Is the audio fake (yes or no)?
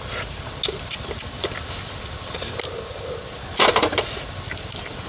no